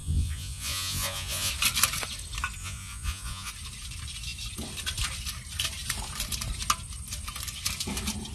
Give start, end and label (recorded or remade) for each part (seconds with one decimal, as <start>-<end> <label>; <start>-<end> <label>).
0.0-1.5 remade; 1.5-2.6 recorded; 2.6-3.5 remade; 3.5-8.3 recorded